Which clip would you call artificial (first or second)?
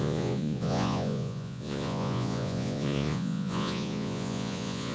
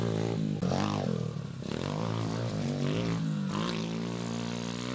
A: first